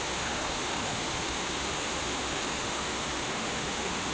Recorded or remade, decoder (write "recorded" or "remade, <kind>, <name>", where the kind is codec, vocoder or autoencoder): remade, autoencoder, DAC-VAE